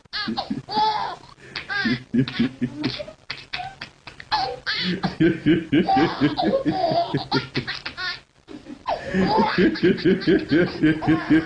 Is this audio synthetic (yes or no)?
no